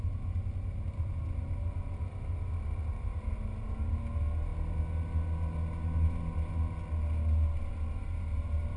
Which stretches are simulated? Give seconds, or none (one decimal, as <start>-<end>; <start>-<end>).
none